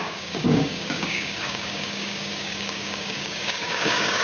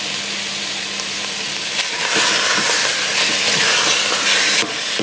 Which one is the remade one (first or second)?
first